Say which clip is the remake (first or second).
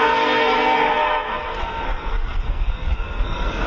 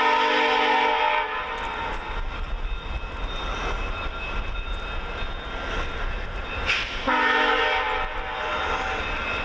first